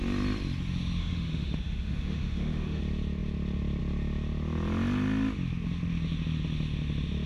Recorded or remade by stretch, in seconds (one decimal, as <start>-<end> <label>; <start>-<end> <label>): 0.0-1.0 recorded; 1.0-2.8 remade; 2.8-7.3 recorded